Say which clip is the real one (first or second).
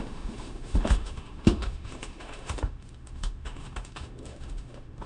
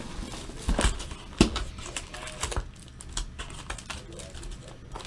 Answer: second